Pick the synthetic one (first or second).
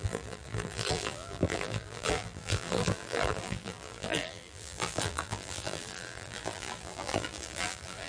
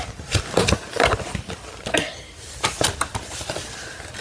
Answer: first